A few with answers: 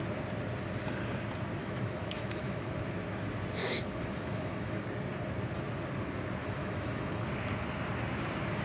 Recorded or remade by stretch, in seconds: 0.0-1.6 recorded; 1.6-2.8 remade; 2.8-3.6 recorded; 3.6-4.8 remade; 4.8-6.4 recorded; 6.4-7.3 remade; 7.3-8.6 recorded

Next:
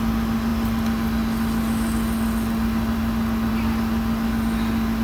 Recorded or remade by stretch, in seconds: 0.0-5.0 recorded

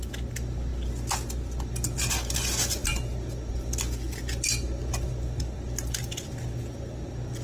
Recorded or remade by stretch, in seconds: 0.0-7.4 recorded

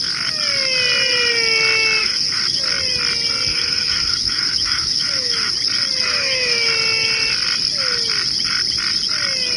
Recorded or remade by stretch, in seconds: 0.0-2.0 recorded; 2.0-2.6 remade; 2.6-3.5 recorded; 3.5-5.5 remade; 5.5-6.1 recorded; 6.1-6.7 remade; 6.7-9.6 recorded

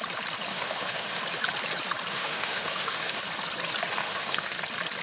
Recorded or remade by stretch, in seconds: 0.0-0.5 recorded; 0.5-1.2 remade; 1.2-2.1 recorded; 2.1-3.2 remade; 3.2-4.0 recorded; 4.0-4.6 remade; 4.6-5.0 recorded

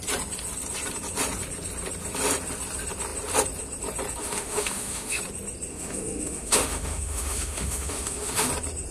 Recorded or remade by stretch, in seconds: 0.0-4.2 recorded; 4.2-5.2 remade; 5.2-5.7 recorded; 5.7-8.5 remade; 8.5-8.9 recorded

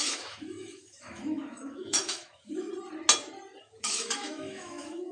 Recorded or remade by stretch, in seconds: 0.0-2.7 remade; 2.7-3.6 recorded; 3.6-5.1 remade